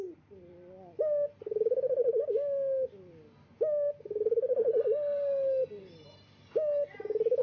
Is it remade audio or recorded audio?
recorded